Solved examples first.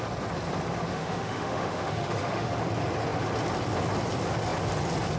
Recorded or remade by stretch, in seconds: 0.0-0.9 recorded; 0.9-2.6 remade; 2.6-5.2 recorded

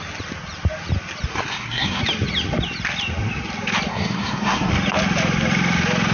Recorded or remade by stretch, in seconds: 0.0-1.3 recorded; 1.3-2.0 remade; 2.0-3.9 recorded; 3.9-4.7 remade; 4.7-6.1 recorded

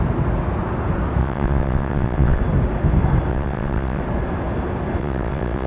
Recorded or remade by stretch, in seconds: 0.0-1.2 recorded; 1.2-2.4 remade; 2.4-3.3 recorded; 3.3-4.0 remade; 4.0-5.0 recorded; 5.0-5.7 remade

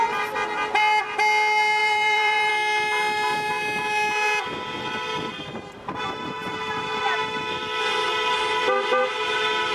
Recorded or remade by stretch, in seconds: 0.0-1.8 recorded; 1.8-2.5 remade; 2.5-9.7 recorded